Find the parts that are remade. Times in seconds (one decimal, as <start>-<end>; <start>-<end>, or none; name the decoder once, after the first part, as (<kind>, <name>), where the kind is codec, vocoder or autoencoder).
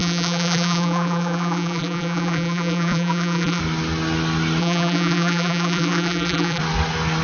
0.0-3.6 (vocoder, BigVGAN v2); 4.6-6.6